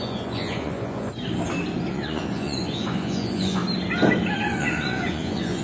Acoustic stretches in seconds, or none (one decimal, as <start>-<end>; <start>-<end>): 1.1-1.9; 3.6-4.6